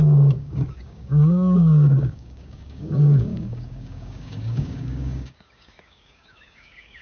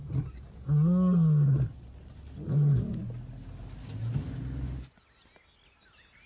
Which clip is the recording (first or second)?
second